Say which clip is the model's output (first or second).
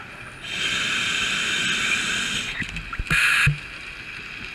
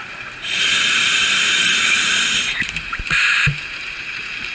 second